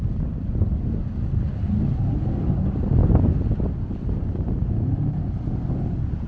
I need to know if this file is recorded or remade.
recorded